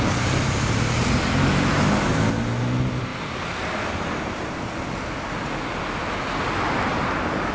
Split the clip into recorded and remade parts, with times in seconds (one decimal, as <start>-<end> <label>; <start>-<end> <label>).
0.0-7.5 recorded